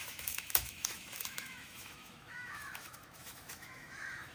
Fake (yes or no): yes